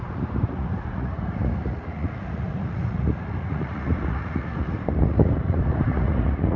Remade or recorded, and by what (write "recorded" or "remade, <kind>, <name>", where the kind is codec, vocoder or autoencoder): remade, vocoder, Vocos